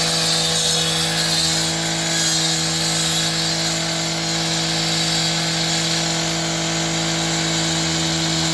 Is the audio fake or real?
real